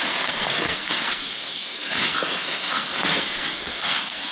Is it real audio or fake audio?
fake